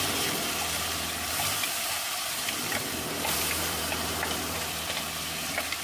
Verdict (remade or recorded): remade